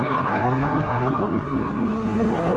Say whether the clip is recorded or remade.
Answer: remade